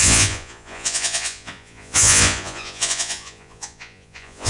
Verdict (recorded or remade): remade